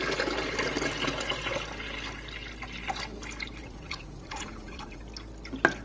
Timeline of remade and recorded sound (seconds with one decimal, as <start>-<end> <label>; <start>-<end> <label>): 0.0-3.6 recorded; 3.6-5.0 remade; 5.0-5.8 recorded